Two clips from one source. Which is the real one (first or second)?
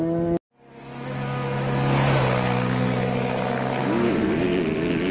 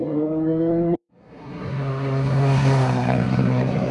first